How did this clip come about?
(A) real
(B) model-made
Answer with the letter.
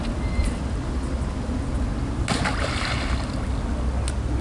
A